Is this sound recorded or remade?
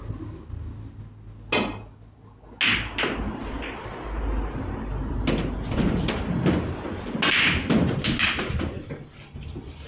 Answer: recorded